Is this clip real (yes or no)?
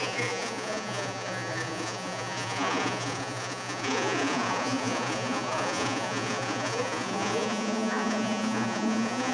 no